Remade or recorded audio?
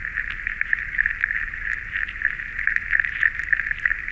recorded